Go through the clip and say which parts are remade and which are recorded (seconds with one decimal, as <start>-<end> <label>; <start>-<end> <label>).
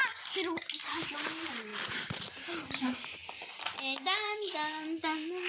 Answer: 0.0-0.9 recorded; 0.9-1.7 remade; 1.7-2.3 recorded; 2.3-3.2 remade; 3.2-5.5 recorded